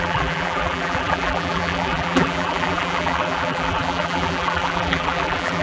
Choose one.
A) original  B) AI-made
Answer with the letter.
B